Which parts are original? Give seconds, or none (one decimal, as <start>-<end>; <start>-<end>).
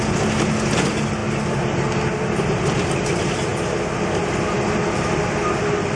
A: 0.0-6.0